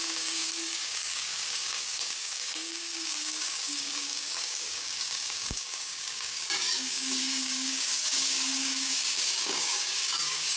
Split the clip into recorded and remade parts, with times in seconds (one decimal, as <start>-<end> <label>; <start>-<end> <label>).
0.0-10.6 remade